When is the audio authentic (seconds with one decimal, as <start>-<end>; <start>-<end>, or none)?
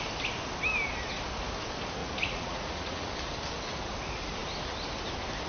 0.0-2.0; 3.1-5.5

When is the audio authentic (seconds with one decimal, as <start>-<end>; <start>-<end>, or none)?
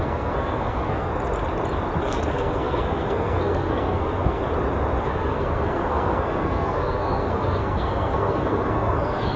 1.1-2.0; 4.4-5.0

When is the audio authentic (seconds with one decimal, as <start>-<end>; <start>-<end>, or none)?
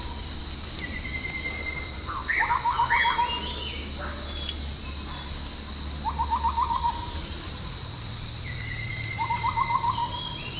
2.2-6.7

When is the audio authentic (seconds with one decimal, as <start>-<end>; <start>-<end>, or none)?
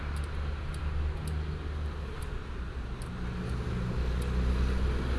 0.0-5.2